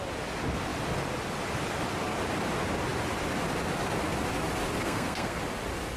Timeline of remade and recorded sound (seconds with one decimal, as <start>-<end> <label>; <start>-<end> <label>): 0.0-4.8 recorded; 4.8-5.4 remade; 5.4-6.0 recorded